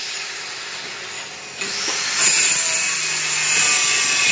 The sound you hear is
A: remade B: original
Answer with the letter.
B